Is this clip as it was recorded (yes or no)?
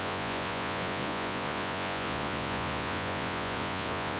no